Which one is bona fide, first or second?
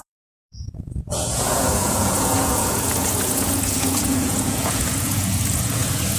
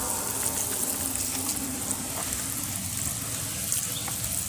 second